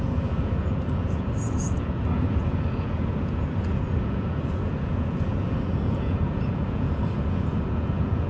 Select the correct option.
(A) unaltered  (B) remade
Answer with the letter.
B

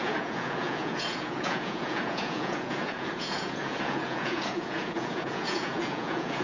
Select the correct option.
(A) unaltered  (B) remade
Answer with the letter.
B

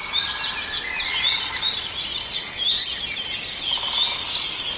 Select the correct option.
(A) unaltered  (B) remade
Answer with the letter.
A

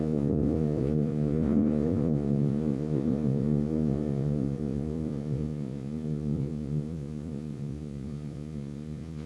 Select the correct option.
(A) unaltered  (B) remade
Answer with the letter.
B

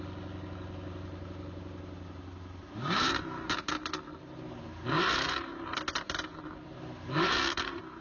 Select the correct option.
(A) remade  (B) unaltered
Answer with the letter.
B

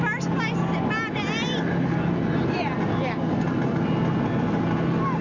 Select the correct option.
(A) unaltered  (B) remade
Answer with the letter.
A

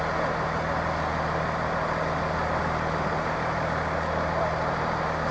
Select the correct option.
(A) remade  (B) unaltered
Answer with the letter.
B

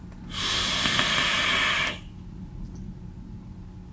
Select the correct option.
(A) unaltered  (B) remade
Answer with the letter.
A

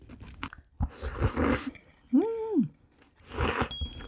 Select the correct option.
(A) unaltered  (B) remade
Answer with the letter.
A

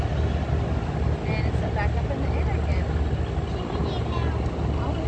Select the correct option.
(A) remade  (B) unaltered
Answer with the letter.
B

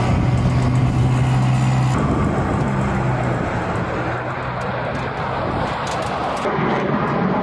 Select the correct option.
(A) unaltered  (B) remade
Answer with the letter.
A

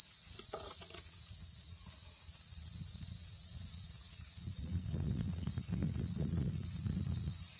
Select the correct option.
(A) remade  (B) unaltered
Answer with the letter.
A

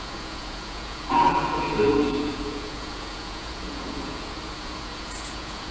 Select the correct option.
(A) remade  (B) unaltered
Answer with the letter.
A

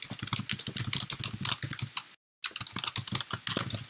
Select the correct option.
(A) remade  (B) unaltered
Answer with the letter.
B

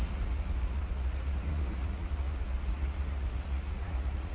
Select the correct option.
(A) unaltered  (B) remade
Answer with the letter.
B